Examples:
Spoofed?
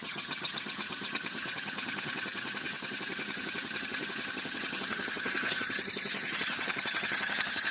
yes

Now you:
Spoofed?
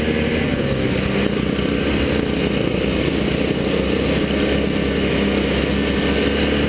no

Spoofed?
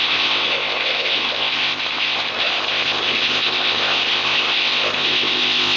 yes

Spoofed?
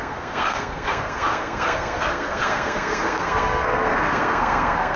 yes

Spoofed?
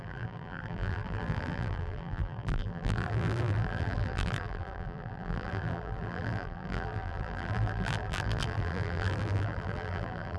yes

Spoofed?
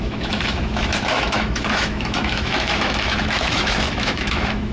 yes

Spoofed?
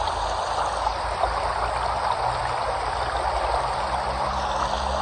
no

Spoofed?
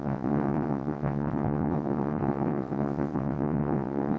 yes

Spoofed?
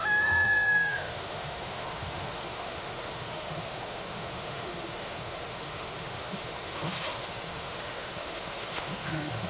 yes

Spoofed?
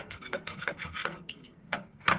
yes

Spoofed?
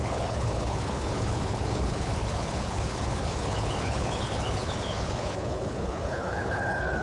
yes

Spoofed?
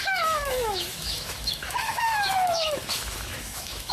yes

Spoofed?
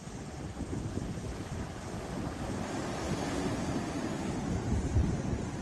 no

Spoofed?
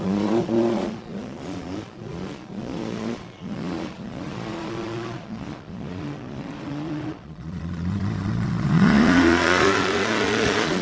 yes